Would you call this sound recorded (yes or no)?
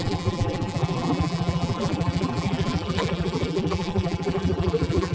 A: no